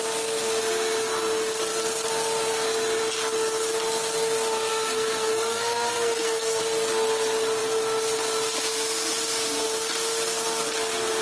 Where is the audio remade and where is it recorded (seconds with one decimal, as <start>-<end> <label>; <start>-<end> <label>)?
0.0-4.7 recorded; 4.7-6.6 remade; 6.6-11.2 recorded